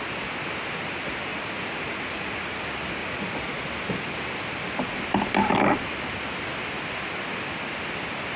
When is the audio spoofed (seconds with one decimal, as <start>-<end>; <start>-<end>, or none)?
1.3-2.6; 3.0-3.6